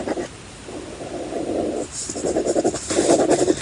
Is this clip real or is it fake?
real